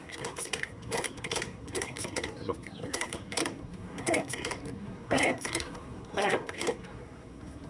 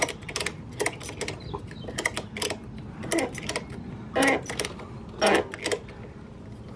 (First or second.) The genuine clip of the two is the second